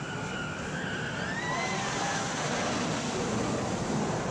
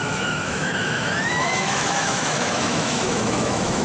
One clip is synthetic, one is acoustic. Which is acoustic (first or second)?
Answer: first